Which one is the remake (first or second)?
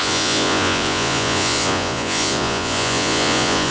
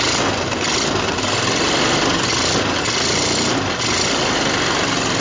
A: first